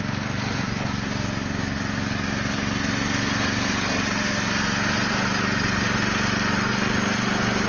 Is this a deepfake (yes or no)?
no